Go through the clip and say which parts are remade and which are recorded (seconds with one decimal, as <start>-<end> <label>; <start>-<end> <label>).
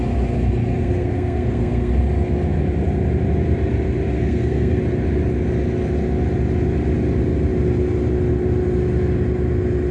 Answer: 0.0-0.8 recorded; 0.8-1.9 remade; 1.9-4.1 recorded; 4.1-4.8 remade; 4.8-9.9 recorded